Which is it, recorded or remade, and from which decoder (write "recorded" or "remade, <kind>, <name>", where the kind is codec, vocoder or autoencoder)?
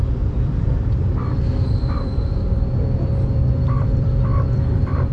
remade, vocoder, BigVGAN v2